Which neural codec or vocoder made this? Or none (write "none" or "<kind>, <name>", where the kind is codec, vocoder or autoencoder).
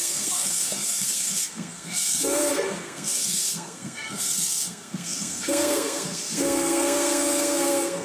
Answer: codec, SNAC